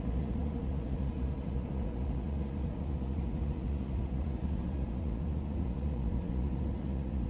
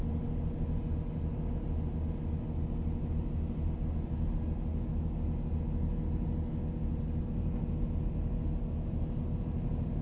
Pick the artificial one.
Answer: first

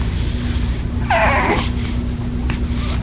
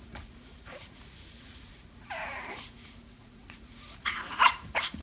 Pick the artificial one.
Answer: second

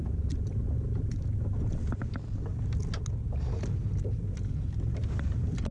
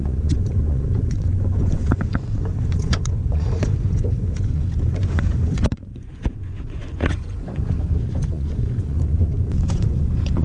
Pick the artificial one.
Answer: second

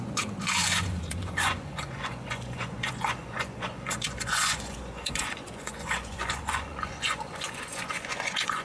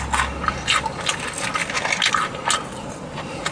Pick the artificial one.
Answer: first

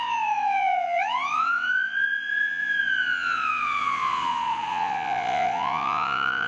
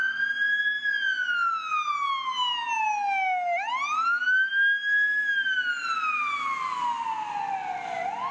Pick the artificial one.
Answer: first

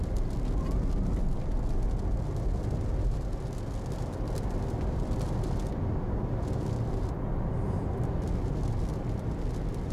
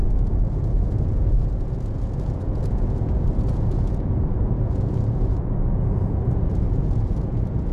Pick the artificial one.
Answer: second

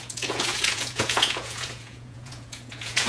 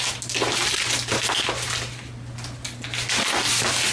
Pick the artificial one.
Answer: first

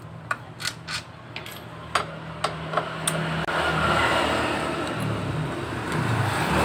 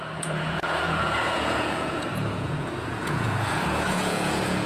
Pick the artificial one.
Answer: second